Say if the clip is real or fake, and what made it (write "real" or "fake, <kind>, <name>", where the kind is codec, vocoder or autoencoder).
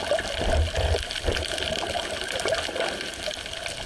real